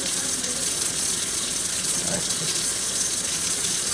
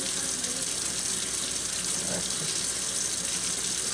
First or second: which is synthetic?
first